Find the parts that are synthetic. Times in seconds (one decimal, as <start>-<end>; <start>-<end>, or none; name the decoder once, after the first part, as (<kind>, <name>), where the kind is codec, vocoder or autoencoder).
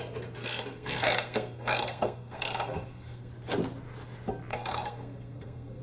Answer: 0.4-3.3 (codec, SNAC); 4.5-5.8